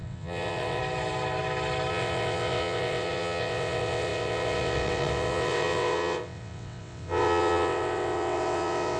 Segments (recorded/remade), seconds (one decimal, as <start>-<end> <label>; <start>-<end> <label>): 0.0-0.8 remade; 0.8-1.9 recorded; 1.9-9.0 remade

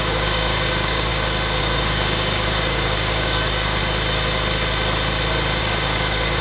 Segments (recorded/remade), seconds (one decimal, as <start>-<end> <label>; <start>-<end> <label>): 0.0-1.1 remade; 1.1-1.6 recorded; 1.6-3.8 remade; 3.8-5.6 recorded; 5.6-6.4 remade

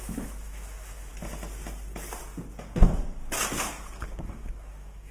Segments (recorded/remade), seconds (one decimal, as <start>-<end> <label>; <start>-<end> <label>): 0.0-1.1 remade; 1.1-4.2 recorded; 4.2-5.1 remade

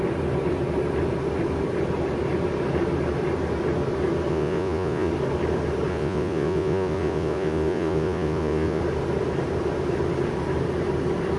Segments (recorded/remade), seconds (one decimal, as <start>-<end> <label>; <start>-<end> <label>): 0.0-4.3 recorded; 4.3-5.1 remade; 5.1-5.9 recorded; 5.9-8.8 remade; 8.8-11.4 recorded

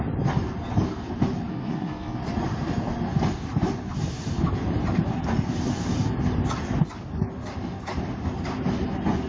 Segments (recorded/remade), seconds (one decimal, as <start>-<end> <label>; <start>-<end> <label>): 0.0-1.5 recorded; 1.5-2.2 remade; 2.2-9.3 recorded